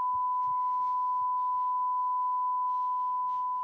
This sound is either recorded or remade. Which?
recorded